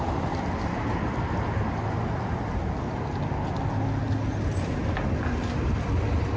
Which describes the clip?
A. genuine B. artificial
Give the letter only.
A